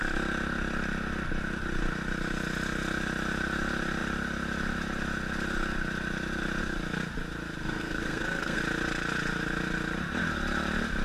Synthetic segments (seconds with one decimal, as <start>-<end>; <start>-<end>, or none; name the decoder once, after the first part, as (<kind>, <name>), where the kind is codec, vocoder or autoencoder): 7.6-8.6 (codec, SNAC)